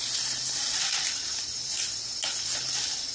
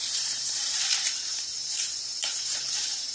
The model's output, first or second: second